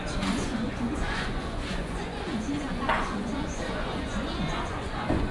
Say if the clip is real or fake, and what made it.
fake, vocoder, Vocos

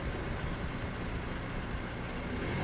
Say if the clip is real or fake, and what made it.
real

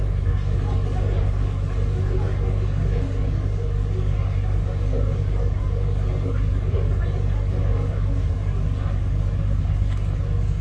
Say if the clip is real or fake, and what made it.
fake, codec, DAC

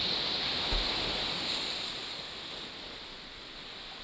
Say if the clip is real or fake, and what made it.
real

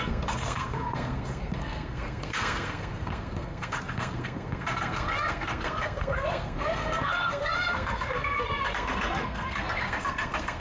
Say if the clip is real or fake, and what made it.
fake, codec, SNAC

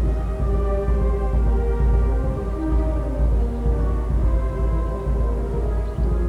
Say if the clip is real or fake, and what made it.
real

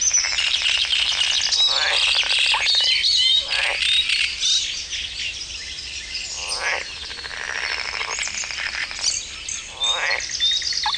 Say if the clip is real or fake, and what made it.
real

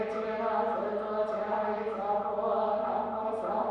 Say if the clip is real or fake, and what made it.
real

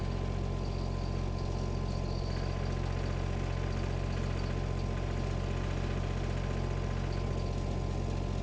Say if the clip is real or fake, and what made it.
real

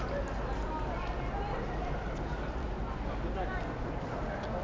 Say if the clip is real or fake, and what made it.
real